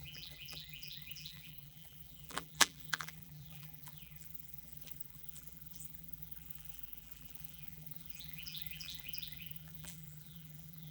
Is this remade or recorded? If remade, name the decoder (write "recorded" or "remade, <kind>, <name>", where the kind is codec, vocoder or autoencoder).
remade, vocoder, BigVGAN v2